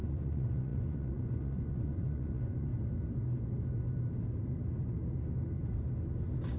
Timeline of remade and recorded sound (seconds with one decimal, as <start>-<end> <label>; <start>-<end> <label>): 0.0-2.7 remade; 2.7-6.6 recorded